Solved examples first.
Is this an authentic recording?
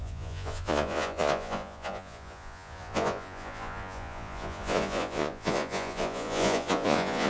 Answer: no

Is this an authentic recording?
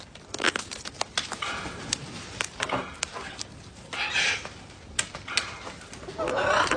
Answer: yes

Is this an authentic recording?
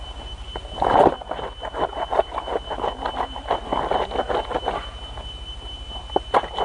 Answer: yes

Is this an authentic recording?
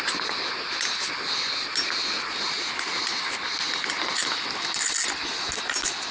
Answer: yes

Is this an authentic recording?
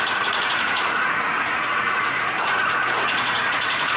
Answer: no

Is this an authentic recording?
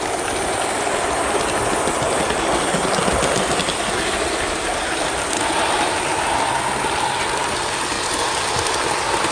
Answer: yes